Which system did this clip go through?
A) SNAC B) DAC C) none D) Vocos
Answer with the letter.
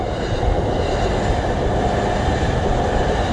C